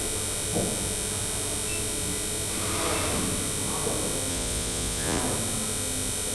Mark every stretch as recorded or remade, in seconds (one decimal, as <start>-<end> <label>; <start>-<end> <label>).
0.0-4.3 recorded; 4.3-5.2 remade; 5.2-6.3 recorded